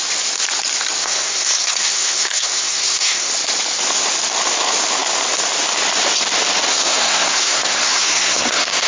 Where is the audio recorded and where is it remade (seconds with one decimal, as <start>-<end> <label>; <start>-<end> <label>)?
0.0-1.0 recorded; 1.0-3.3 remade; 3.3-6.7 recorded; 6.7-8.9 remade